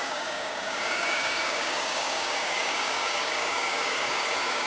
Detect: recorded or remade remade